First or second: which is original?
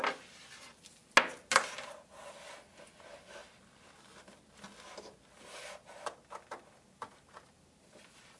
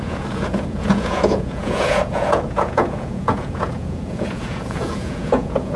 first